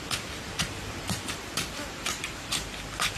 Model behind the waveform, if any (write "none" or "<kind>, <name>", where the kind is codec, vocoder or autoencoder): vocoder, BigVGAN v2